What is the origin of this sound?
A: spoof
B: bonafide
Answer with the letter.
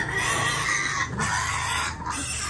B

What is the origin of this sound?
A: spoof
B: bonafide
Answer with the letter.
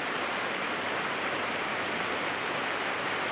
B